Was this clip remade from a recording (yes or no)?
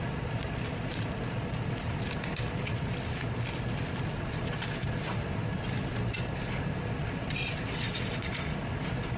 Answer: yes